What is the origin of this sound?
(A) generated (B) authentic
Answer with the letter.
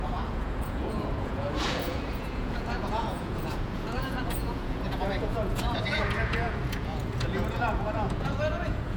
A